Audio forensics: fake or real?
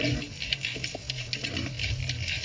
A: real